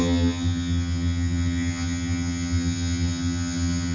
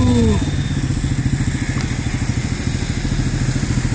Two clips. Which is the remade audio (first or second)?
first